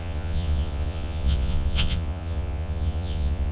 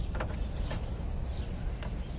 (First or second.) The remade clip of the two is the first